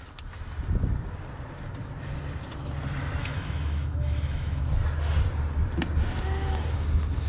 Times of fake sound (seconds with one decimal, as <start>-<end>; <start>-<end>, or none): 3.2-4.6